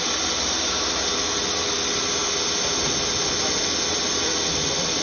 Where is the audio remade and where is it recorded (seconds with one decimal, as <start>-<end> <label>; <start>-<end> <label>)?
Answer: 0.0-5.0 recorded